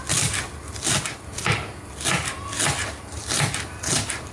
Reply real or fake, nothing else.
real